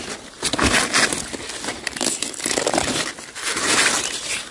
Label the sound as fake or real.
real